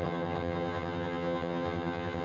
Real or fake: fake